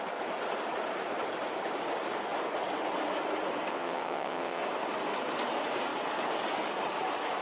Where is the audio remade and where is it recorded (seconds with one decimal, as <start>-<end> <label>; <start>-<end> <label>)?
0.0-3.7 recorded; 3.7-4.6 remade; 4.6-7.4 recorded